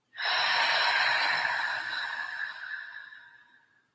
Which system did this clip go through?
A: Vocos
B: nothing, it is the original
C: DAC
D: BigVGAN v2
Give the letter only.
B